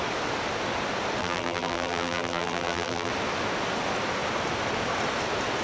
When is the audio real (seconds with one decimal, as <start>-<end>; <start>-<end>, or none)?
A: 0.0-1.2; 3.1-5.6